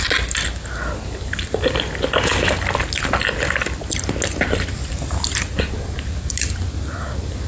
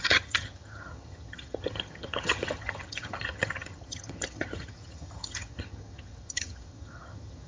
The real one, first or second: first